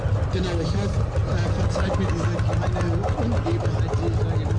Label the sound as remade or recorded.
recorded